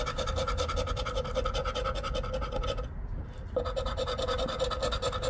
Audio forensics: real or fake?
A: real